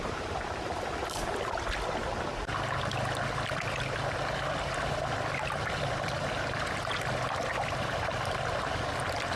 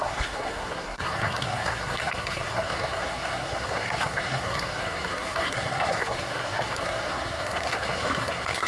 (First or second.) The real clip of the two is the first